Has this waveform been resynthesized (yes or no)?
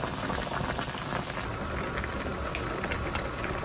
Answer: no